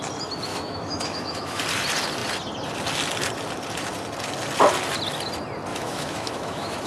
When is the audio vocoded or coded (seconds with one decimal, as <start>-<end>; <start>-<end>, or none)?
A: 0.5-1.6; 5.7-6.9